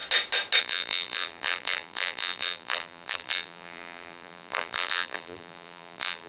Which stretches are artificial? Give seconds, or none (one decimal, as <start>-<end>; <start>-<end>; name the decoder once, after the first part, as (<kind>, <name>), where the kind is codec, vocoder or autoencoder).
0.6-6.3 (vocoder, BigVGAN v2)